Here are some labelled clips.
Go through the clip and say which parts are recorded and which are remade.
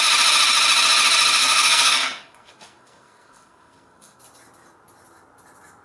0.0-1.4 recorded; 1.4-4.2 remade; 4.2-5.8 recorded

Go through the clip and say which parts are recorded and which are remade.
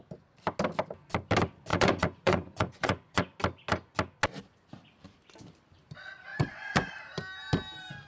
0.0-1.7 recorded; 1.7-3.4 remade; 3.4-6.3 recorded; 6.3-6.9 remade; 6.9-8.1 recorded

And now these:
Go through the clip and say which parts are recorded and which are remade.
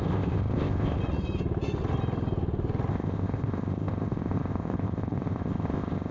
0.0-1.0 remade; 1.0-2.9 recorded; 2.9-6.1 remade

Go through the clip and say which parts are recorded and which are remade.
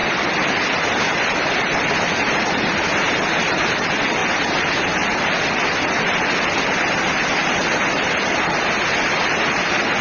0.0-10.0 recorded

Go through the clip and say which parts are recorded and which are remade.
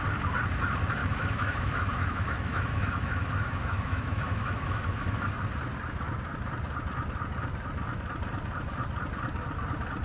0.0-1.0 recorded; 1.0-5.3 remade; 5.3-10.0 recorded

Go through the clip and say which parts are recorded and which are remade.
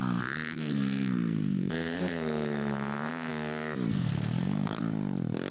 0.0-3.3 remade; 3.3-3.9 recorded; 3.9-4.8 remade; 4.8-5.5 recorded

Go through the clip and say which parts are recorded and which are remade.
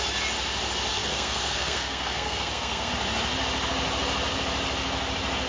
0.0-0.9 recorded; 0.9-2.9 remade; 2.9-5.5 recorded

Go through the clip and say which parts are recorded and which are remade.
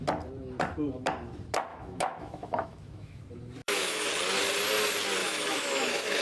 0.0-1.7 recorded; 1.7-3.2 remade; 3.2-3.6 recorded; 3.6-4.1 remade; 4.1-5.2 recorded; 5.2-6.2 remade